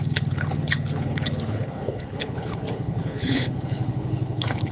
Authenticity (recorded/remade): remade